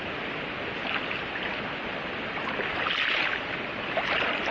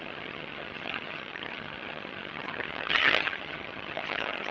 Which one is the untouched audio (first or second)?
first